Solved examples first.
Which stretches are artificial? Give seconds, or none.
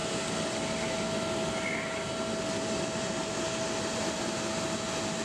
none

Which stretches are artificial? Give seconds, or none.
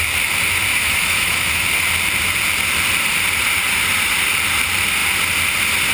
0.7-1.6 (autoencoder, DAC-VAE)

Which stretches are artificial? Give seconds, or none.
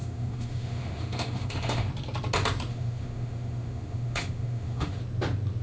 0.0-1.9 (autoencoder, DAC-VAE); 2.7-5.0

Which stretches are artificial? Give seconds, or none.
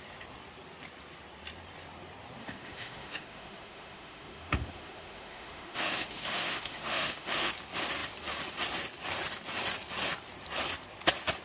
2.4-7.5 (autoencoder, DAC-VAE)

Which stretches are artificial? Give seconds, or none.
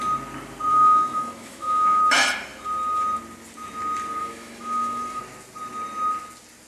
0.7-2.0 (autoencoder, DAC-VAE); 4.2-5.2